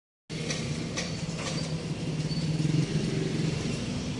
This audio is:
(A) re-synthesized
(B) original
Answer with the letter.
B